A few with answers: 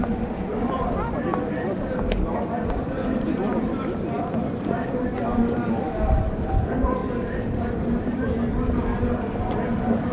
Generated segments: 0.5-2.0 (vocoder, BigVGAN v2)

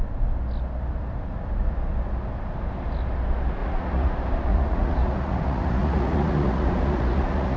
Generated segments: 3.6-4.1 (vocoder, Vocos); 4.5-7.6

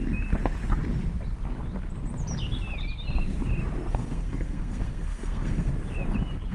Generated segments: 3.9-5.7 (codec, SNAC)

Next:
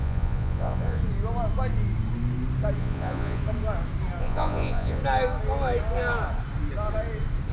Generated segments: 0.0-1.0 (vocoder, Vocos); 2.8-3.4; 4.2-5.0